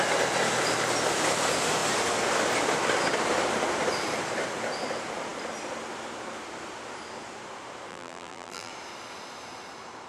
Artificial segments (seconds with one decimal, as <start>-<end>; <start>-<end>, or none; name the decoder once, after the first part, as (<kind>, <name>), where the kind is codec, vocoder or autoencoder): 7.9-8.7 (vocoder, BigVGAN v2)